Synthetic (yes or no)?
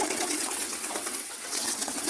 yes